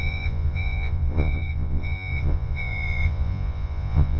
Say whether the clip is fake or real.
fake